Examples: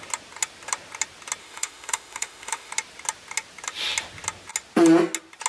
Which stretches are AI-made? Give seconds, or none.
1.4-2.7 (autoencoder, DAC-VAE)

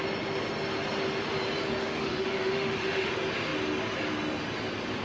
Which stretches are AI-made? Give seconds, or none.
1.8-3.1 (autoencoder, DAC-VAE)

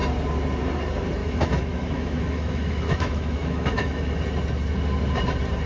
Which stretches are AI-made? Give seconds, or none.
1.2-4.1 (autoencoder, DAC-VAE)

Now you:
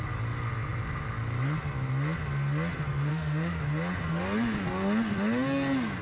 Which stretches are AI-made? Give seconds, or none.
3.1-3.6 (autoencoder, DAC-VAE)

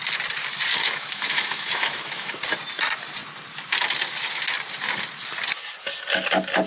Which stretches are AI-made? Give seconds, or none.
0.8-2.4 (autoencoder, DAC-VAE)

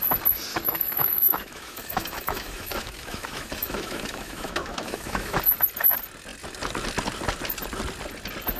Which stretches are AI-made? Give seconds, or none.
0.5-5.4 (autoencoder, DAC-VAE)